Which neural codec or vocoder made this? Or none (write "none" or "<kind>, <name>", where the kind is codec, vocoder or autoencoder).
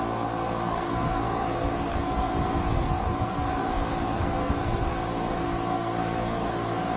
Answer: codec, SNAC